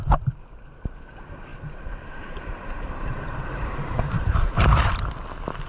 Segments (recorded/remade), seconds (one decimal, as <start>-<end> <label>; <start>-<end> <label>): 0.0-1.5 recorded; 1.5-4.9 remade; 4.9-5.7 recorded